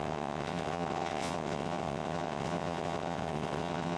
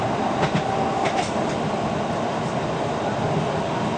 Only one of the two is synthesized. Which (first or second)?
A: first